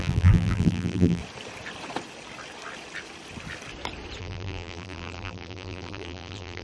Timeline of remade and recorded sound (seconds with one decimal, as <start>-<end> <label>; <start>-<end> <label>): 0.0-1.2 remade; 1.2-4.2 recorded; 4.2-6.6 remade

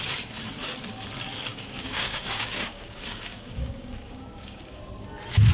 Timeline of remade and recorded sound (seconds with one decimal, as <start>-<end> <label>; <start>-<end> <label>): 0.0-1.5 recorded; 1.5-4.8 remade; 4.8-5.5 recorded